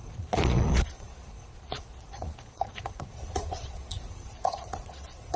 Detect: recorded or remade remade